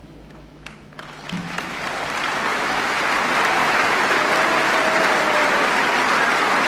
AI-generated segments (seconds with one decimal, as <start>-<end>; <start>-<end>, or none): 0.0-1.8; 2.5-3.0; 3.6-4.3